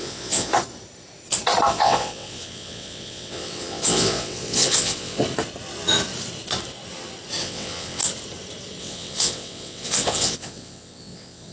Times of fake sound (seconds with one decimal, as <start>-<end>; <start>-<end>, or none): 0.0-0.5; 1.7-5.2; 7.4-8.0; 8.8-11.5